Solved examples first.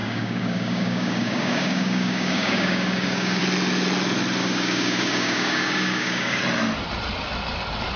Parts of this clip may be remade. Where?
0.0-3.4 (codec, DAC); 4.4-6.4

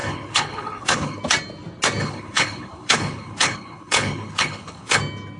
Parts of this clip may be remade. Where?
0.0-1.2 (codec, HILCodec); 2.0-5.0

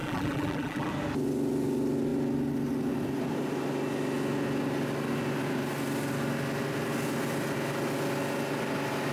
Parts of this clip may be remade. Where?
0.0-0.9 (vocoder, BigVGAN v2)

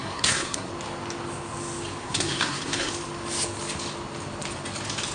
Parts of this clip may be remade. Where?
0.0-0.7 (codec, SNAC); 2.0-2.9

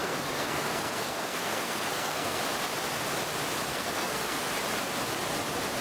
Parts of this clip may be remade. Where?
0.0-2.4 (codec, SNAC); 3.7-4.5

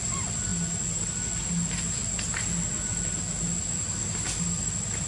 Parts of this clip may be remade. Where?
0.0-0.5 (vocoder, BigVGAN v2); 3.6-5.1